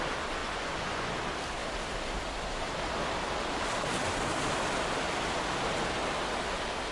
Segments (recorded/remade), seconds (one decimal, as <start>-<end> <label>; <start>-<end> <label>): 0.0-0.4 recorded; 0.4-1.1 remade; 1.1-6.9 recorded